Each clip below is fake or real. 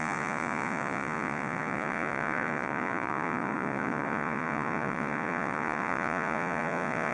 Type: fake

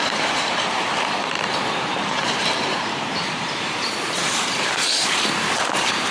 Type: fake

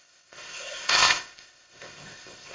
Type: fake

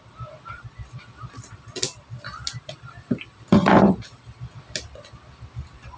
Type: real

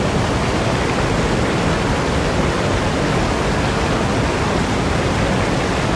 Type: real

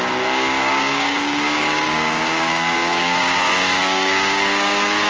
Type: fake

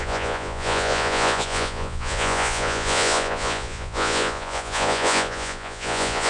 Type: fake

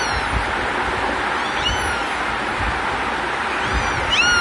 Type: real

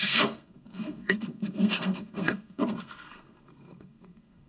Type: fake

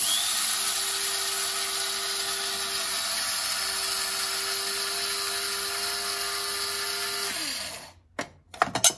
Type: real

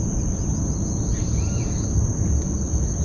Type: real